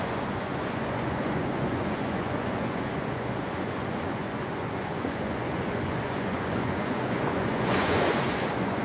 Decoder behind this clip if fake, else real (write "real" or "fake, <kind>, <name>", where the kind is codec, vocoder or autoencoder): fake, vocoder, Vocos